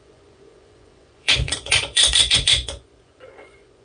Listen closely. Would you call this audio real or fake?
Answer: fake